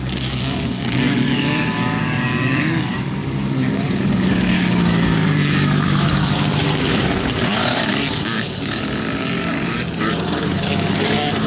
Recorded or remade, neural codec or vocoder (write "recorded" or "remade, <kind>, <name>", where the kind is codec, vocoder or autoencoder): remade, codec, DAC